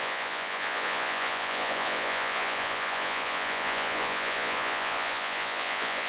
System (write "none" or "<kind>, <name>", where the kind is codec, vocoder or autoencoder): vocoder, Vocos